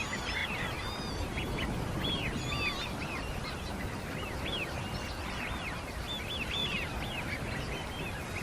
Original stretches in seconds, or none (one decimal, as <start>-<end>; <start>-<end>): 0.0-6.6; 7.2-8.4